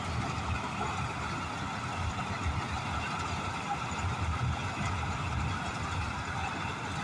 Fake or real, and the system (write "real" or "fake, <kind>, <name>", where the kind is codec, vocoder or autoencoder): real